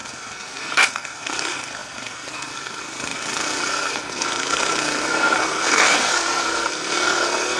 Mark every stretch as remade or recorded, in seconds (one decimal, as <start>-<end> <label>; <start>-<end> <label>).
0.0-7.6 remade